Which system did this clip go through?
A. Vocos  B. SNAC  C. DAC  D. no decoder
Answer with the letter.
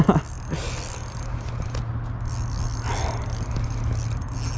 D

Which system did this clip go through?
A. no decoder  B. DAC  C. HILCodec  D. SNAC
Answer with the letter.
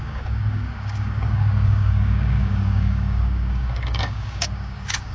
B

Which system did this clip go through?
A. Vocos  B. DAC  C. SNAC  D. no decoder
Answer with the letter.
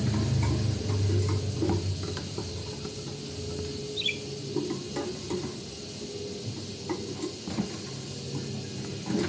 D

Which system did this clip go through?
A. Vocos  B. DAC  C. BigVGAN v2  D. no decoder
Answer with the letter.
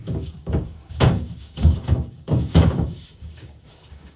B